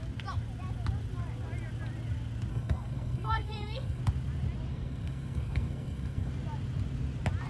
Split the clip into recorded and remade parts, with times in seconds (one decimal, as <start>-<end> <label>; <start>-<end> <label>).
0.0-2.5 recorded; 2.5-4.0 remade; 4.0-4.7 recorded; 4.7-6.3 remade; 6.3-7.5 recorded